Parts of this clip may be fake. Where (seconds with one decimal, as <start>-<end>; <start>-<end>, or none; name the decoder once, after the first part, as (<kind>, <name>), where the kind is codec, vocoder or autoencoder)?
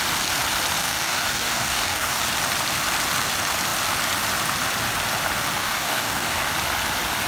0.8-2.2 (codec, DAC); 5.6-6.5